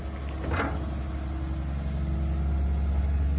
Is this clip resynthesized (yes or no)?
no